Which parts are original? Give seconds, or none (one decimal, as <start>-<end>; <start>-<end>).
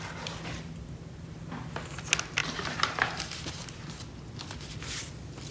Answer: 0.0-2.4; 4.0-5.5